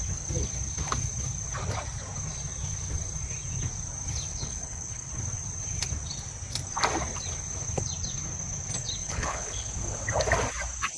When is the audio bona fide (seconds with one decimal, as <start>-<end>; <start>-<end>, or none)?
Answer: 0.0-4.3; 5.1-9.0; 9.7-11.0

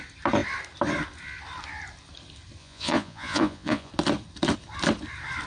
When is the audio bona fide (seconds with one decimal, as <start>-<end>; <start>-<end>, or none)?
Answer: 0.0-2.6; 3.9-5.5